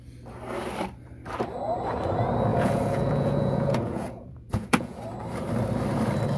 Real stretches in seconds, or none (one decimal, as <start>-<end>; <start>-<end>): 0.0-2.5; 5.0-6.4